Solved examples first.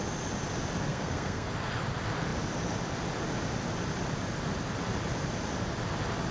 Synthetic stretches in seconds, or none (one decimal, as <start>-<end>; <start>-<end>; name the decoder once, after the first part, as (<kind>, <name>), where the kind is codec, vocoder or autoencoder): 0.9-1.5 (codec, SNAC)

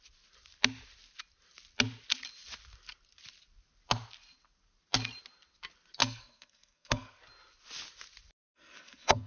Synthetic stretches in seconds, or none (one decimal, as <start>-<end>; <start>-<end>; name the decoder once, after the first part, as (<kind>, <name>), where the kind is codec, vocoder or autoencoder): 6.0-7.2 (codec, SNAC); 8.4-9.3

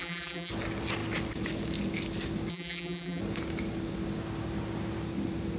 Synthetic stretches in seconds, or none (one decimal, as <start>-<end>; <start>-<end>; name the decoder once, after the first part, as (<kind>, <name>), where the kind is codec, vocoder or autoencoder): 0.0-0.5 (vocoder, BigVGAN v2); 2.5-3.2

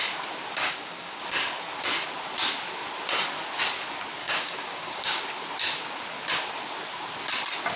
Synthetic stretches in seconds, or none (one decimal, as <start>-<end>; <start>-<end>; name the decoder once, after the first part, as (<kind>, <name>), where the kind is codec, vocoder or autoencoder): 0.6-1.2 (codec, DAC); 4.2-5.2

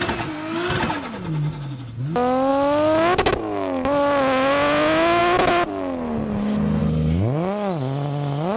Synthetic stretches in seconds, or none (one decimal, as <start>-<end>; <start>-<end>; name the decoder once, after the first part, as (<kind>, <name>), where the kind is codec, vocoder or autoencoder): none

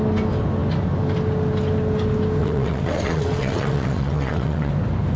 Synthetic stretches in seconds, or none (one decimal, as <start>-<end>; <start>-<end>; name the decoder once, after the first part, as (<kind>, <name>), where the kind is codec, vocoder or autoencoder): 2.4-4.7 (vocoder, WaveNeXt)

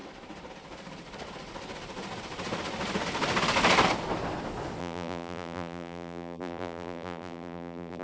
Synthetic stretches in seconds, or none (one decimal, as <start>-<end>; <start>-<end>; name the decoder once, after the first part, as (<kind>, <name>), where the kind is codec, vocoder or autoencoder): 4.8-8.0 (vocoder, BigVGAN v2)